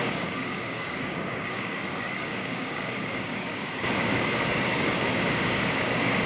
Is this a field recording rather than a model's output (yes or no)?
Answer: no